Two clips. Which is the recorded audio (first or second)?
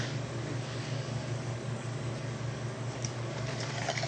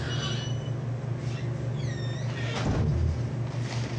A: second